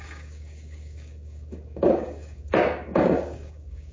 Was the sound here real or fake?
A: fake